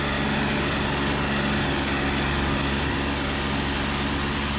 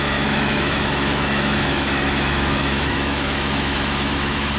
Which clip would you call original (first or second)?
first